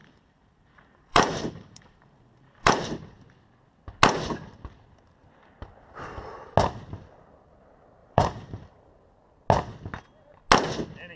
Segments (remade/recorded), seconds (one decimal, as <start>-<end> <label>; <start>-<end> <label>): 0.0-2.8 remade; 2.8-8.0 recorded; 8.0-8.9 remade; 8.9-11.2 recorded